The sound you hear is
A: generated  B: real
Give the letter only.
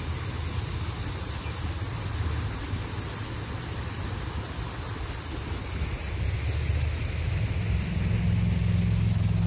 B